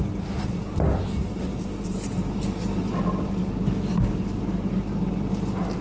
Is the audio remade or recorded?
recorded